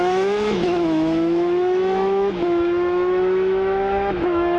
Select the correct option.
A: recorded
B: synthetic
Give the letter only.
B